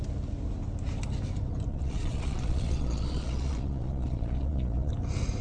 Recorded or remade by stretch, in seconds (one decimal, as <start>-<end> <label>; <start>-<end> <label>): 0.0-1.7 recorded; 1.7-4.9 remade; 4.9-5.4 recorded